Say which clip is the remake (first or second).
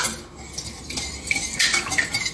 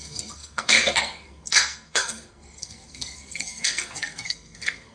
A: second